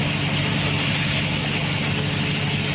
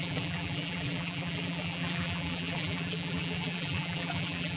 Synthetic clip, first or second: second